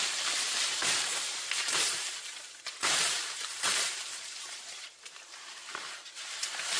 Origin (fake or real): fake